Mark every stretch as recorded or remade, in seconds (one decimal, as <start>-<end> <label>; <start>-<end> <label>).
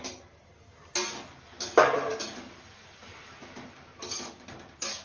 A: 0.0-3.0 recorded; 3.0-3.9 remade; 3.9-5.0 recorded